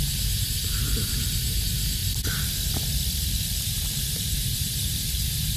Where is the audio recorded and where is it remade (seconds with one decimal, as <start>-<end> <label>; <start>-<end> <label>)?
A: 0.0-2.0 remade; 2.0-3.7 recorded; 3.7-5.6 remade